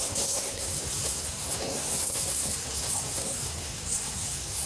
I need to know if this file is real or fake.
fake